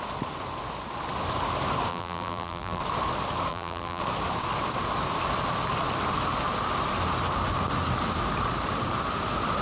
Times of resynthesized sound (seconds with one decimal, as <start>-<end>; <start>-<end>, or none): 1.9-2.8; 3.5-4.0